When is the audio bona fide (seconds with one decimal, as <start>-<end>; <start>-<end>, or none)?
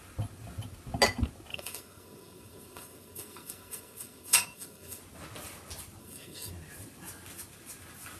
0.0-1.5; 5.0-6.0; 6.5-8.2